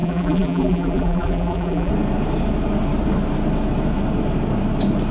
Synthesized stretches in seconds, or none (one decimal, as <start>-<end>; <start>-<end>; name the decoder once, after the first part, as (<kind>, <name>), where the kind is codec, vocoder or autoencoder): 0.0-1.9 (vocoder, BigVGAN v2)